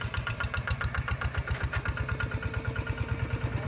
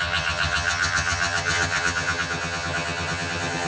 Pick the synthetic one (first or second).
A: second